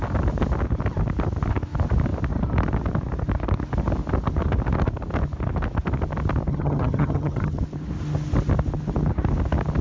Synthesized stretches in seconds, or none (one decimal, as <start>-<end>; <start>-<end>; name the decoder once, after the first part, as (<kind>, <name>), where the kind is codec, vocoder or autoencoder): 6.5-7.6 (vocoder, HiFi-GAN)